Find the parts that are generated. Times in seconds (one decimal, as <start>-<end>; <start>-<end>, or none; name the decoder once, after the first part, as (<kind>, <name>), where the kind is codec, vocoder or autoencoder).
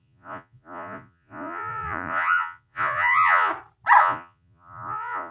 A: 0.0-3.5 (vocoder, Vocos); 4.0-5.3